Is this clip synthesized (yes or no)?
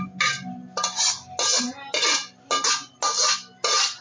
no